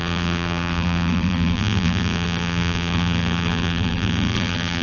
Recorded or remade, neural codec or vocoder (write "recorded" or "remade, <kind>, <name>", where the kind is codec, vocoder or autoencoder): remade, vocoder, BigVGAN v2